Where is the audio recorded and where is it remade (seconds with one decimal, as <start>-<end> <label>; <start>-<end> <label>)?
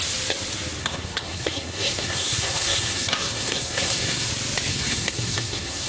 0.0-0.8 recorded; 0.8-4.3 remade; 4.3-4.7 recorded; 4.7-5.9 remade